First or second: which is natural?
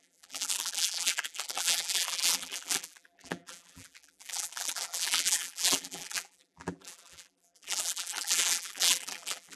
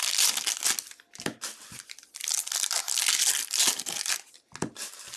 second